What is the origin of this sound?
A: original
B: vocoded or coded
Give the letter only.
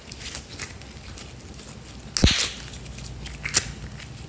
A